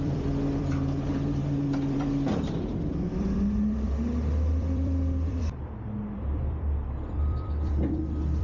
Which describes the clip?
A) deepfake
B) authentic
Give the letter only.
A